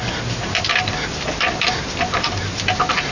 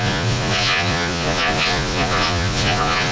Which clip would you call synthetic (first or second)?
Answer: second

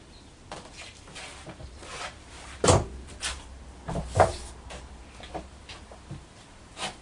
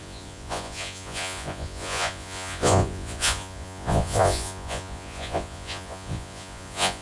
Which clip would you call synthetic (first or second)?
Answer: second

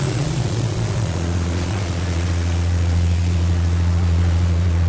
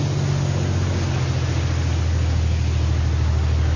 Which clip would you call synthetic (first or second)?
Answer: first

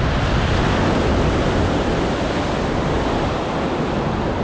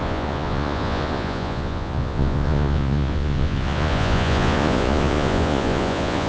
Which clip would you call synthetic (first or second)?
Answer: second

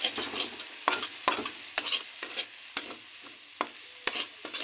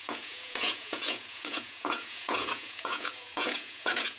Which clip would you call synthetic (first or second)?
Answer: second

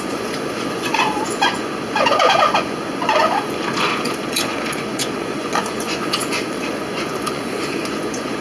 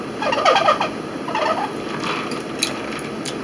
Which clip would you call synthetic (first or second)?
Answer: first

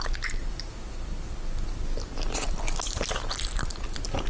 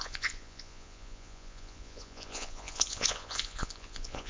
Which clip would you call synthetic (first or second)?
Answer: second